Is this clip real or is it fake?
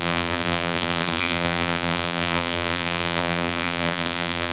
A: fake